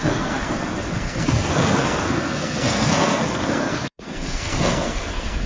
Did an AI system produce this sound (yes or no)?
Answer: yes